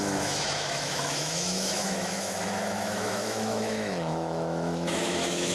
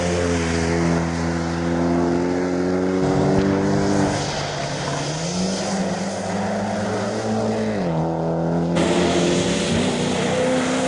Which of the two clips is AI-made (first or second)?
first